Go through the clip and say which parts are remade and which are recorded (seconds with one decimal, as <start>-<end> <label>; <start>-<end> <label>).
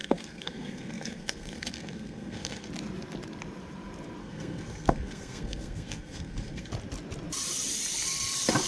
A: 0.0-2.7 remade; 2.7-4.2 recorded; 4.2-6.7 remade; 6.7-8.7 recorded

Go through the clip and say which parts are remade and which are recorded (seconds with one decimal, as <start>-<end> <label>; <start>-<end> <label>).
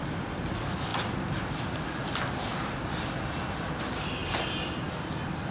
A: 0.0-0.9 recorded; 0.9-3.8 remade; 3.8-5.5 recorded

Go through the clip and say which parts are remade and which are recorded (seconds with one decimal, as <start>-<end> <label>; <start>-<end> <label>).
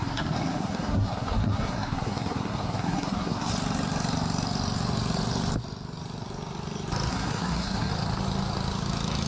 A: 0.0-3.5 remade; 3.5-7.1 recorded; 7.1-7.9 remade; 7.9-9.3 recorded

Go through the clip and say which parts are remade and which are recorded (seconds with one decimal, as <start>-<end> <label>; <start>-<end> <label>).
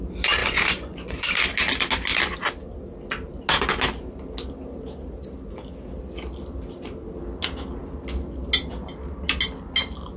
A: 0.0-0.4 recorded; 0.4-1.2 remade; 1.2-10.2 recorded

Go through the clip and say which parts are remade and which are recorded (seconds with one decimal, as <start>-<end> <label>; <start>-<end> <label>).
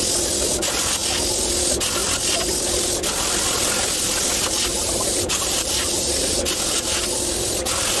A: 0.0-4.7 recorded; 4.7-6.4 remade; 6.4-8.0 recorded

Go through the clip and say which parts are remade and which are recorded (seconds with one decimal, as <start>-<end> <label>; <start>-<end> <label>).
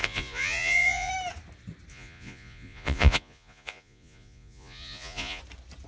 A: 0.0-1.1 remade; 1.1-1.9 recorded; 1.9-5.4 remade; 5.4-5.9 recorded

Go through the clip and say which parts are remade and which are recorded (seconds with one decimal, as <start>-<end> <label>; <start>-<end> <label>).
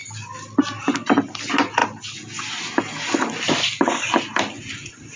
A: 0.0-5.2 recorded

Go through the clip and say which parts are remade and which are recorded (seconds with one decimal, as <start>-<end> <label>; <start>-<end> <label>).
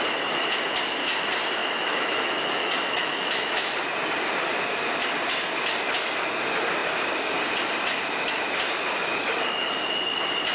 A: 0.0-1.6 recorded; 1.6-3.6 remade; 3.6-10.5 recorded